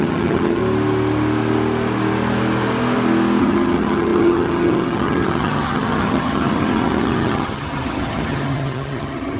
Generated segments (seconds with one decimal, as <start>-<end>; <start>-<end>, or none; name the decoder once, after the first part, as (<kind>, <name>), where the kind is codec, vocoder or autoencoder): 0.0-0.6 (vocoder, HiFi-GAN); 3.4-9.4